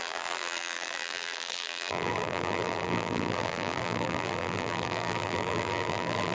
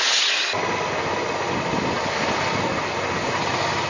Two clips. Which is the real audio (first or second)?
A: second